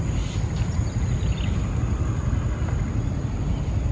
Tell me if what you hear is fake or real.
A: real